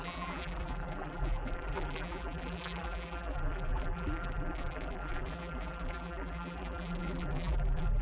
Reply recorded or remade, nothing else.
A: remade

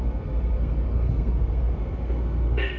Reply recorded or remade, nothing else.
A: remade